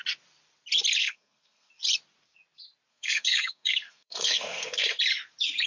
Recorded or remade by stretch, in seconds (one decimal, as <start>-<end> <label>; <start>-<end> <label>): 0.0-1.0 recorded; 1.0-1.7 remade; 1.7-2.9 recorded; 2.9-5.0 remade; 5.0-5.7 recorded

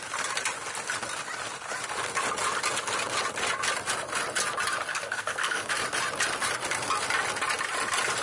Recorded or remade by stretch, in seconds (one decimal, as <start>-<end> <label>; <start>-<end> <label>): 0.0-4.9 recorded; 4.9-5.7 remade; 5.7-8.2 recorded

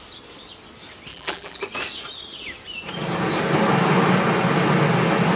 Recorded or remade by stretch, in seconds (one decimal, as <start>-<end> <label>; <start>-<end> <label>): 0.0-1.1 recorded; 1.1-1.6 remade; 1.6-5.4 recorded

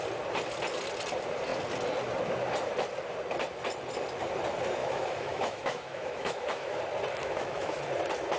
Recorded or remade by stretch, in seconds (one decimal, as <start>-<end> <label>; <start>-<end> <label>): 0.0-4.8 recorded; 4.8-6.8 remade; 6.8-7.2 recorded; 7.2-7.8 remade; 7.8-8.4 recorded

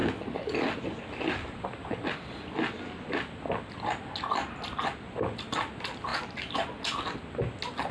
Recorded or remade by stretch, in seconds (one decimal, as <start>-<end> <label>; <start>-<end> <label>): 0.0-7.9 recorded

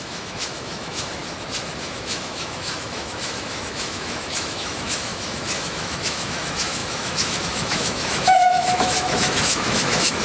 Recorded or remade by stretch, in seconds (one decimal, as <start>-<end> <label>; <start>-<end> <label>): 0.0-1.2 remade; 1.2-1.8 recorded; 1.8-10.2 remade

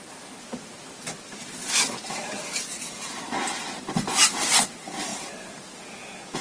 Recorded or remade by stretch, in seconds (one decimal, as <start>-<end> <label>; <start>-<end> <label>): 0.0-5.1 recorded; 5.1-6.4 remade